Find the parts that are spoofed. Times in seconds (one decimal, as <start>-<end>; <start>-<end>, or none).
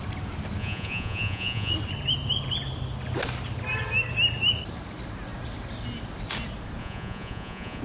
0.6-1.7; 6.8-7.8